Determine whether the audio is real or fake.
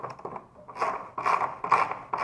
real